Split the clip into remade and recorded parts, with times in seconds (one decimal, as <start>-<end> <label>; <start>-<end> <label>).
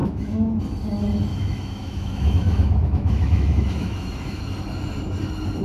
0.0-0.6 remade; 0.6-1.3 recorded; 1.3-4.4 remade; 4.4-5.6 recorded